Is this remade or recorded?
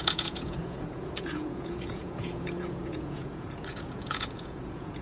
remade